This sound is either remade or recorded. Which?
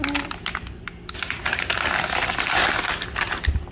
recorded